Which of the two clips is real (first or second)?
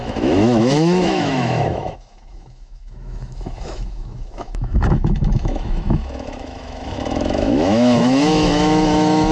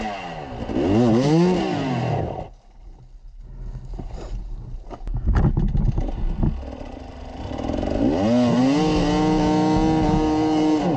second